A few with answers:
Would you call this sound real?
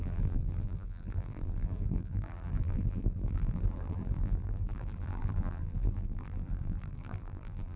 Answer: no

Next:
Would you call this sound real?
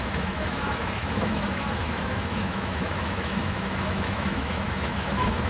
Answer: no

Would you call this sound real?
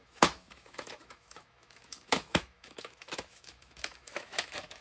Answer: no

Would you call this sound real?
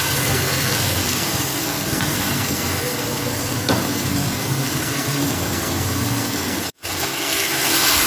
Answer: no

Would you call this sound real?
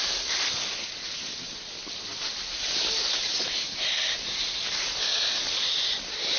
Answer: yes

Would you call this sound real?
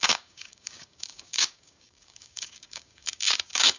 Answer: no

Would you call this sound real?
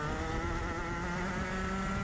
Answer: yes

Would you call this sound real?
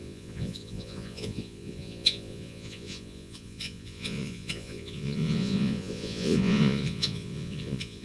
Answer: no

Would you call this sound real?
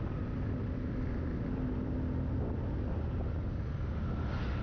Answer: yes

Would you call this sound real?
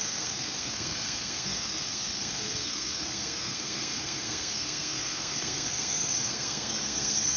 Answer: no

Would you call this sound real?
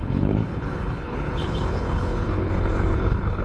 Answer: no